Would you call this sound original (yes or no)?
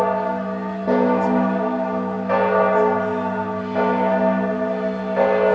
yes